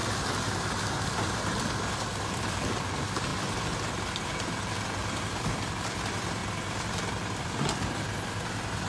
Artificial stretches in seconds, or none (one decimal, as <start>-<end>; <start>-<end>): 2.3-3.3; 4.6-6.4; 7.4-8.9

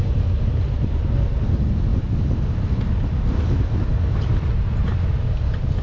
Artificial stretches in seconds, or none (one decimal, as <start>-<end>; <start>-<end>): none

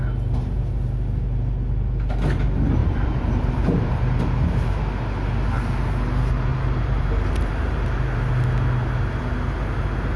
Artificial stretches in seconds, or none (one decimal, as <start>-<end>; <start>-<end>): 2.8-4.2; 6.5-8.3

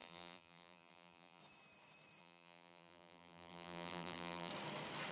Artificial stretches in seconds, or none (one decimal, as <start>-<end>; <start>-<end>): 0.0-1.4; 2.2-4.5

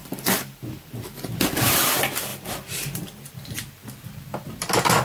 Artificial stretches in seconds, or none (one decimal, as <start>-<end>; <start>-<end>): 0.0-1.9; 2.3-3.3

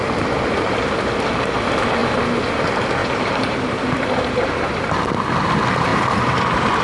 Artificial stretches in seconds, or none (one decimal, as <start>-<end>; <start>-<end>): 3.0-5.0; 5.9-6.8